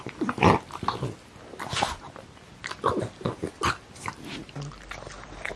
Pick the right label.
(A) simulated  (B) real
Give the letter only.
B